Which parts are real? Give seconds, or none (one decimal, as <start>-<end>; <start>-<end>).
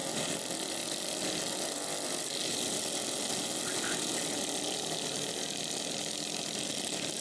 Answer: 0.0-7.2